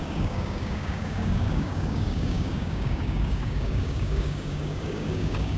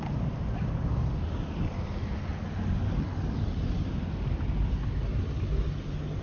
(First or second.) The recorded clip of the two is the second